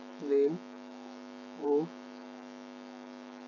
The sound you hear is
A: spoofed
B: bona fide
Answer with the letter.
A